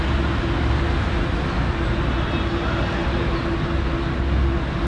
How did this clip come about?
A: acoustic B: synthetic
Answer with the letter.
A